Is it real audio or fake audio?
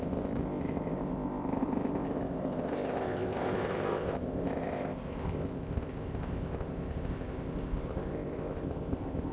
fake